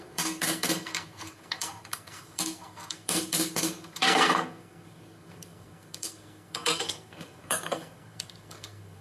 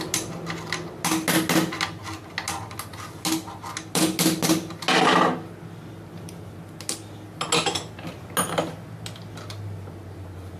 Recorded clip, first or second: second